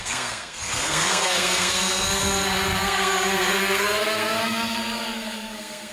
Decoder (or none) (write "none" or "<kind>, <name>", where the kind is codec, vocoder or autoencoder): codec, SNAC